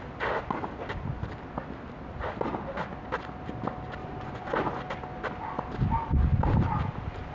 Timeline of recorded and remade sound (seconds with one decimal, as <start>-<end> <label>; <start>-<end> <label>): 0.0-4.0 recorded; 4.0-4.8 remade; 4.8-7.3 recorded